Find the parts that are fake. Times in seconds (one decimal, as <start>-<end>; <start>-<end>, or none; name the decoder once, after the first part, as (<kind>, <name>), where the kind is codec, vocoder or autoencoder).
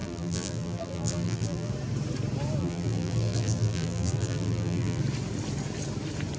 0.0-1.7 (vocoder, BigVGAN v2); 2.6-5.0